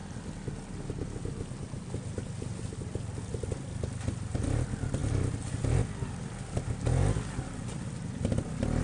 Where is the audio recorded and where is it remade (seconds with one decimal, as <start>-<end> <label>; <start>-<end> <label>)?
0.0-8.8 recorded